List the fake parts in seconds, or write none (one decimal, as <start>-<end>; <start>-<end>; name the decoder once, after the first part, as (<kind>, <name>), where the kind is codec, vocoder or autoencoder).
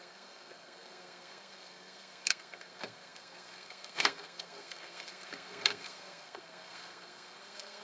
0.0-7.8 (codec, SNAC)